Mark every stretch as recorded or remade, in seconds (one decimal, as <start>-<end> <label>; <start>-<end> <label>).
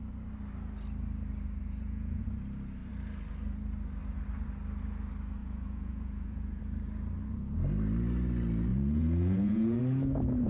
0.0-1.6 recorded; 1.6-2.2 remade; 2.2-5.4 recorded; 5.4-6.6 remade; 6.6-8.7 recorded; 8.7-9.8 remade; 9.8-10.5 recorded